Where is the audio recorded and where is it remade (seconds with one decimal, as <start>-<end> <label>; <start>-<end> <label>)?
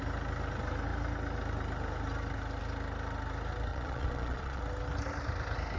0.0-3.7 recorded; 3.7-4.6 remade; 4.6-5.8 recorded